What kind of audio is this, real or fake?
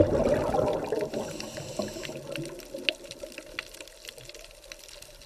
real